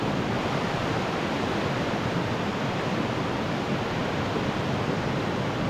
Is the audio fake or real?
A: fake